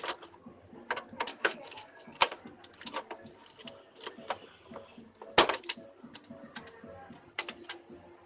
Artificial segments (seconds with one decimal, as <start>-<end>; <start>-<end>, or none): 1.3-2.4